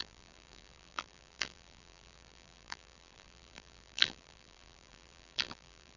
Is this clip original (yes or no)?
no